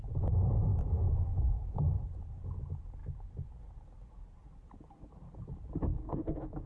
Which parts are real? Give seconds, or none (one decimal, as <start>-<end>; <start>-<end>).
0.0-0.7; 1.7-5.9